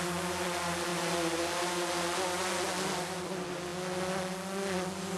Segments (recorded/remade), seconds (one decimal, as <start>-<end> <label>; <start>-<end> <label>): 0.0-5.2 recorded